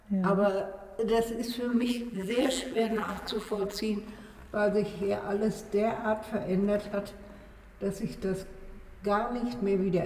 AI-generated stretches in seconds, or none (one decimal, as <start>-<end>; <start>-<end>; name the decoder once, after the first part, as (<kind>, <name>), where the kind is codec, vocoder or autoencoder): 1.7-3.8 (vocoder, BigVGAN v2)